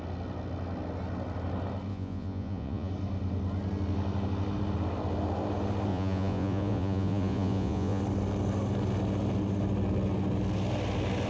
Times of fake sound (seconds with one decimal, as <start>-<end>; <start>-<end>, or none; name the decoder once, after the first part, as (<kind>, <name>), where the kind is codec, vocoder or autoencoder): 1.9-2.9 (vocoder, Vocos); 5.9-8.0